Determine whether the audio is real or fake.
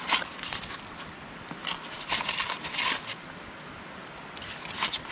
real